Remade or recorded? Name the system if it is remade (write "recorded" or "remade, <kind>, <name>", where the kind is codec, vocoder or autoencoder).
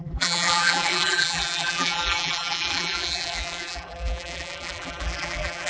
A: remade, vocoder, BigVGAN v2